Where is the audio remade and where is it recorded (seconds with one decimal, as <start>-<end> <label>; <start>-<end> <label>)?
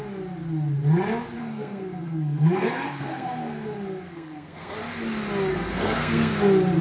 0.0-1.4 recorded; 1.4-4.7 remade; 4.7-5.5 recorded; 5.5-6.3 remade; 6.3-6.8 recorded